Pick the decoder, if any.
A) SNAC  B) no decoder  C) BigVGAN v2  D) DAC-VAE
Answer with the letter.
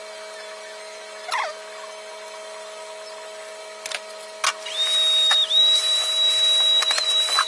B